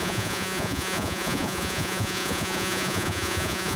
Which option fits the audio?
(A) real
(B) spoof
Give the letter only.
B